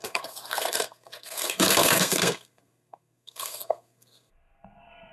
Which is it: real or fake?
fake